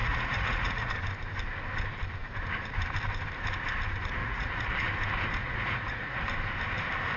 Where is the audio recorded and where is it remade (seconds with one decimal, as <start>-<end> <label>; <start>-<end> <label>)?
0.0-0.9 remade; 0.9-4.2 recorded; 4.2-4.9 remade; 4.9-5.4 recorded; 5.4-6.2 remade; 6.2-7.2 recorded